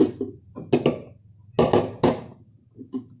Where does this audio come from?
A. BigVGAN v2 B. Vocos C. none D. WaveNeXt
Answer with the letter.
C